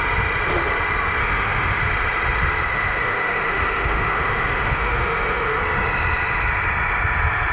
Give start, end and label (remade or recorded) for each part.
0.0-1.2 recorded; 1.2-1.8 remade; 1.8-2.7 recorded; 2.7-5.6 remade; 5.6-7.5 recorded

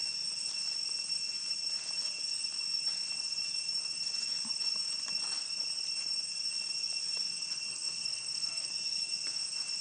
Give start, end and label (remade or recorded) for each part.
0.0-7.7 recorded; 7.7-8.7 remade; 8.7-9.8 recorded

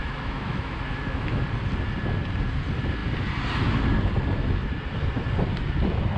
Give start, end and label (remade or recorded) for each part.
0.0-1.4 remade; 1.4-6.2 recorded

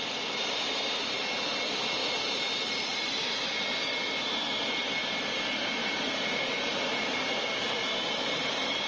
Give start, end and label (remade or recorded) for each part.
0.0-2.0 recorded; 2.0-3.2 remade; 3.2-5.8 recorded; 5.8-7.0 remade; 7.0-8.0 recorded; 8.0-8.9 remade

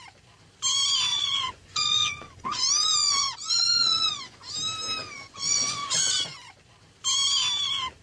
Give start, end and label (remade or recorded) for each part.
0.0-1.1 recorded; 1.1-4.5 remade; 4.5-5.0 recorded; 5.0-6.5 remade; 6.5-8.0 recorded

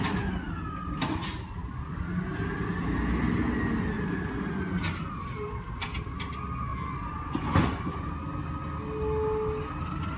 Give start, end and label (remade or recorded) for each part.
0.0-6.7 recorded; 6.7-8.1 remade; 8.1-10.2 recorded